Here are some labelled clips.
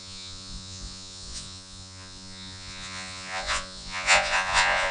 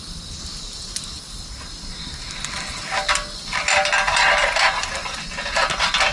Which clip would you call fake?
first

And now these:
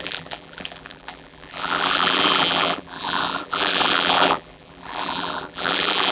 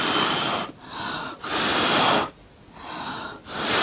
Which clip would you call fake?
first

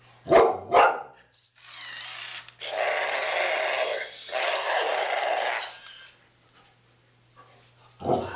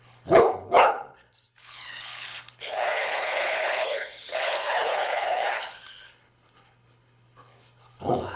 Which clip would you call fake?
second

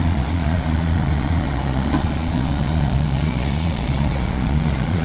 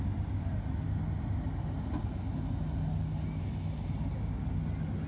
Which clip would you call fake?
first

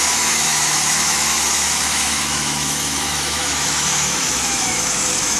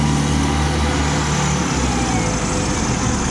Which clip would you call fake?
first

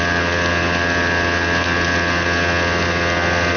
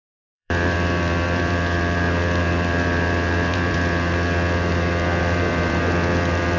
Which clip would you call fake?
second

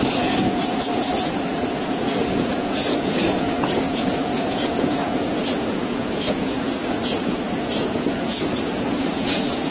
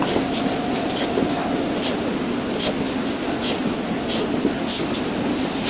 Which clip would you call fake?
first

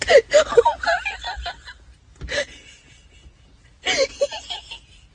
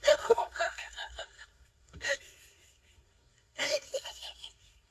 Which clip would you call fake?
second